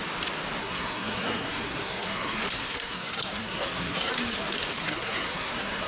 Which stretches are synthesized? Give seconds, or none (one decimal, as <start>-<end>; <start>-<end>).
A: 0.6-4.1; 4.8-5.9